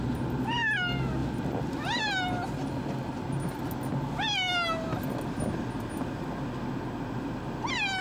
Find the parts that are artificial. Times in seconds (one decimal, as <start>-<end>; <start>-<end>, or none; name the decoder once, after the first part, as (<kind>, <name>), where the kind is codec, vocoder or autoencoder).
none

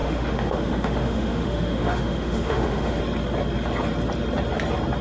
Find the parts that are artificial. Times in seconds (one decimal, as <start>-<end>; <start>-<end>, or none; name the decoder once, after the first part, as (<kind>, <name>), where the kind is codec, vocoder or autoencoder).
0.0-3.0 (autoencoder, DAC-VAE)

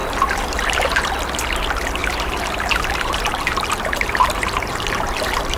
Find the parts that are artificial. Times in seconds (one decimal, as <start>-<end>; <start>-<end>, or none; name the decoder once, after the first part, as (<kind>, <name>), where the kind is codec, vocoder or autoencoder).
0.0-1.1 (vocoder, BigVGAN v2); 2.0-5.6

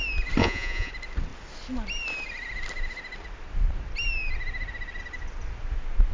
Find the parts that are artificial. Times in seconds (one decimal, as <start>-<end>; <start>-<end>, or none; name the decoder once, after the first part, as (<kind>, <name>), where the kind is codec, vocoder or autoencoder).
0.4-0.9 (vocoder, Vocos)

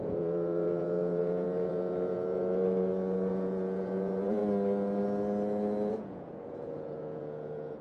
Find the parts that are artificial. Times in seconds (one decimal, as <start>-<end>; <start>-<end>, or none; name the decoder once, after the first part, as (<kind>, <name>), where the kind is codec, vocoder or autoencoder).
0.0-4.4 (vocoder, Vocos); 5.9-7.8

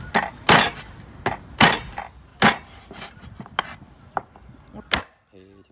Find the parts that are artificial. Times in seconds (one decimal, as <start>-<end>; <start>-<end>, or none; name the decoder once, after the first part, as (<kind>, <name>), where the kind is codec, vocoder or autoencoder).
none

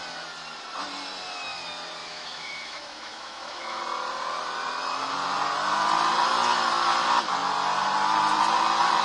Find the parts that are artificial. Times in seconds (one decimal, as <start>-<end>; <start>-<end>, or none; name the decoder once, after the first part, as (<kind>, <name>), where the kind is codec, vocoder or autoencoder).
2.0-3.8 (autoencoder, DAC-VAE)

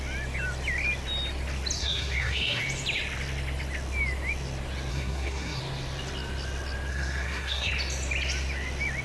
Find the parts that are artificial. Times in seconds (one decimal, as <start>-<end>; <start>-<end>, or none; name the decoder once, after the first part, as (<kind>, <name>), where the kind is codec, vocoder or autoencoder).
1.8-2.6 (codec, SNAC); 4.9-5.6; 6.9-7.7